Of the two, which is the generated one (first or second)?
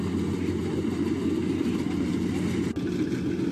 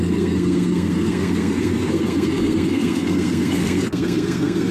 second